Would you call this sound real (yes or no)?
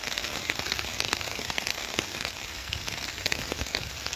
no